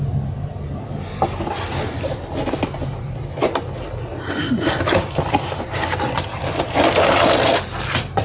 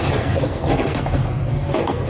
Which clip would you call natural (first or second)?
first